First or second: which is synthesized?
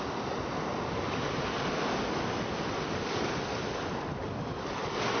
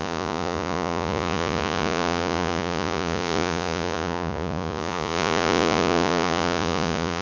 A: second